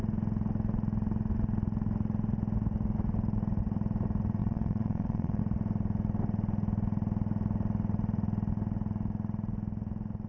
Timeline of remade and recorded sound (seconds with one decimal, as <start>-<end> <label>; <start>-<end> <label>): 0.0-4.4 recorded; 4.4-5.4 remade; 5.4-10.3 recorded